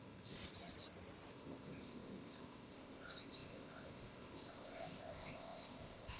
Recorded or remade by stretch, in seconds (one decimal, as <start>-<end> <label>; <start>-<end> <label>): 0.0-0.5 remade; 0.5-1.3 recorded; 1.3-6.2 remade